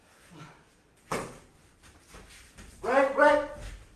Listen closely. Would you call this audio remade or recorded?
recorded